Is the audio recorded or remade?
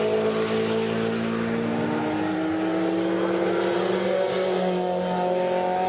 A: recorded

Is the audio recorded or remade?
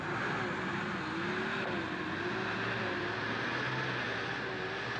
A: recorded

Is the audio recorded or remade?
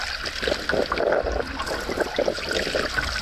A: recorded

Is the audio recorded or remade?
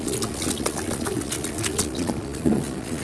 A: remade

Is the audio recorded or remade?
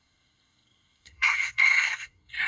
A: remade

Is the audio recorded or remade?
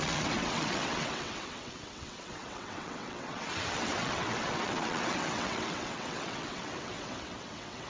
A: remade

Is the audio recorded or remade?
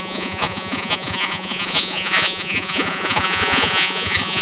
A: remade